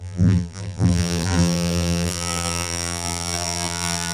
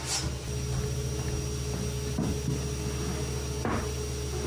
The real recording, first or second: second